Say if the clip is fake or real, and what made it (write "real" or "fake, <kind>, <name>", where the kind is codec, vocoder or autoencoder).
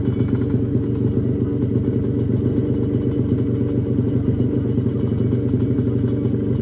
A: real